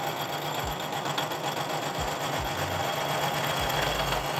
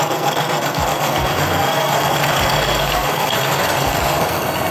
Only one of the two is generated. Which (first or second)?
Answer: second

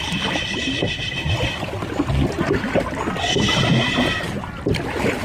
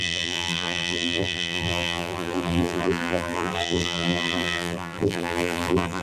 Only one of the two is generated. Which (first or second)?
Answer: second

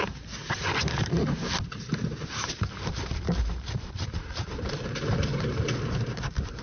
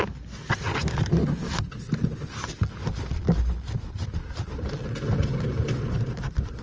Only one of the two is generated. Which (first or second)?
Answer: first